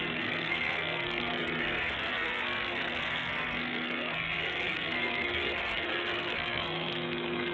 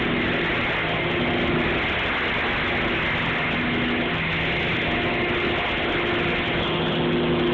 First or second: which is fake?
first